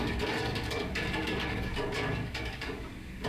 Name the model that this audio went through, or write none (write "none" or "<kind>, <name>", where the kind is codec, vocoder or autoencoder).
codec, DAC